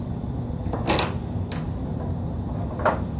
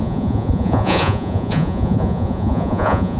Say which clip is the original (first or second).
first